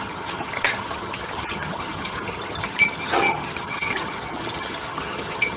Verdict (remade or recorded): remade